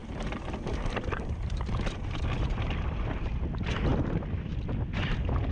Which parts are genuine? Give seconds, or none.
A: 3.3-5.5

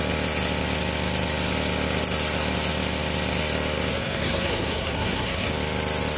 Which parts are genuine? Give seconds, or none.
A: 0.0-3.9; 5.5-6.2

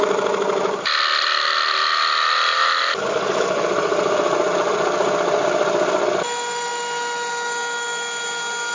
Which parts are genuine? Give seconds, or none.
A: 0.0-8.7

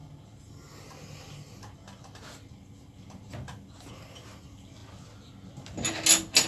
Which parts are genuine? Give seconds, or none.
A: 0.0-6.5

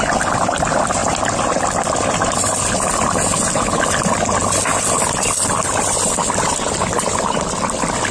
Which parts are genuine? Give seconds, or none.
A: 0.0-1.0; 2.7-4.7; 7.2-8.1

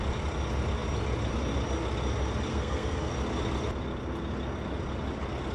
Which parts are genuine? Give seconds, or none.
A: 0.0-2.5; 3.1-5.5